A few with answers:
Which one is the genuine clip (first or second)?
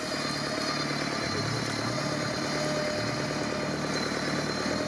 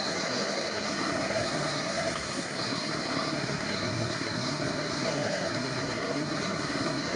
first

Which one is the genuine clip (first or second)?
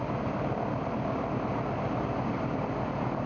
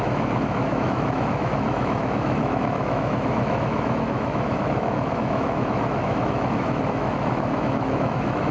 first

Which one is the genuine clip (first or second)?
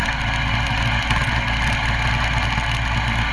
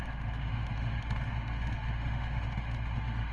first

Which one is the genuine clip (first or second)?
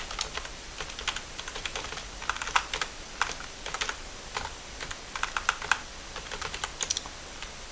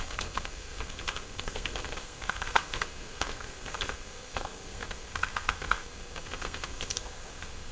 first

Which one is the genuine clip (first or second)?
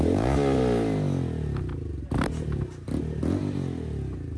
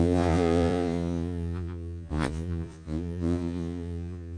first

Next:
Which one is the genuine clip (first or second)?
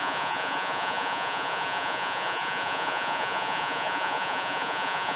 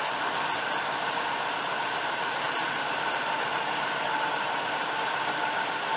second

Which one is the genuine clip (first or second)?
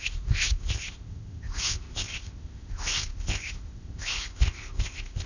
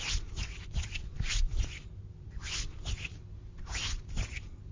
second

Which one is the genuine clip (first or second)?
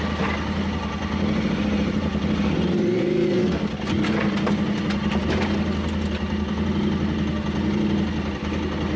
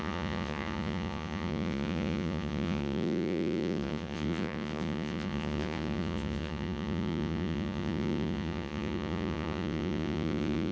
first